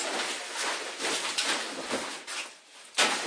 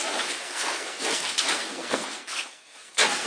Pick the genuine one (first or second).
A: first